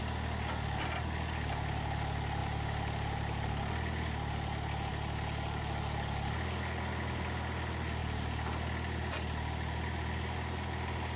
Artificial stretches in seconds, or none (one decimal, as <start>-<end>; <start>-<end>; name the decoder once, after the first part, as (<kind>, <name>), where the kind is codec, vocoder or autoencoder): 2.4-3.5 (vocoder, BigVGAN v2)